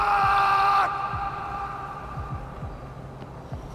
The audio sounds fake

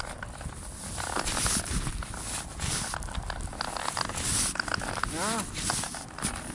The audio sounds real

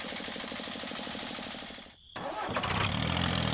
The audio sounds fake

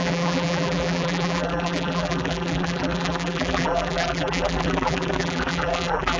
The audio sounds fake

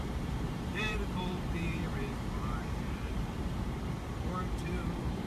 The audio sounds fake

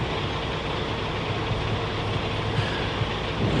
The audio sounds real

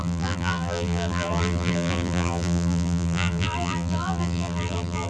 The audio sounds fake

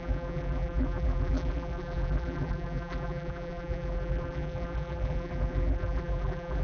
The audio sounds fake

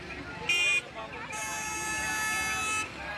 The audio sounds real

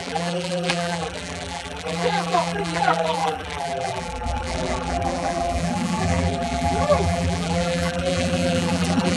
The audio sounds fake